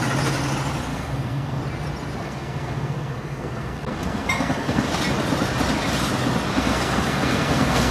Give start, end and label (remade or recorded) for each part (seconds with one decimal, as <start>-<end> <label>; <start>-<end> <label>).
0.0-0.9 recorded; 0.9-1.6 remade; 1.6-2.2 recorded; 2.2-4.9 remade; 4.9-6.5 recorded; 6.5-7.9 remade